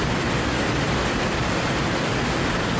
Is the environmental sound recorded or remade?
recorded